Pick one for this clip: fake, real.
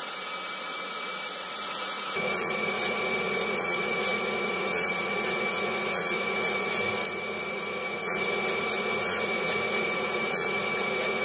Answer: fake